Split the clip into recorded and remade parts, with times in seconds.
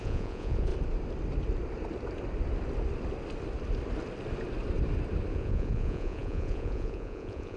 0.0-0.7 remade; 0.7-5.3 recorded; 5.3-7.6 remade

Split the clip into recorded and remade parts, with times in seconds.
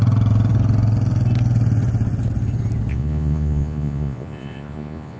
0.0-2.9 recorded; 2.9-5.2 remade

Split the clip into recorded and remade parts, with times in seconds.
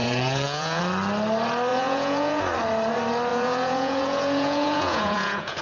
0.0-0.8 remade; 0.8-1.7 recorded; 1.7-2.4 remade; 2.4-3.3 recorded; 3.3-5.6 remade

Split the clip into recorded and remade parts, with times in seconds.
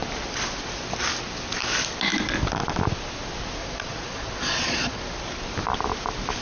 0.0-3.6 recorded; 3.6-5.0 remade; 5.0-6.4 recorded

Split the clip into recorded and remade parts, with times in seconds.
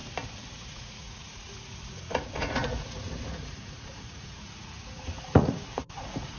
0.0-0.5 recorded; 0.5-6.4 remade